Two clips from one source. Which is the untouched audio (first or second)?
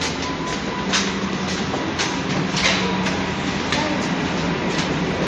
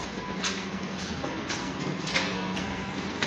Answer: first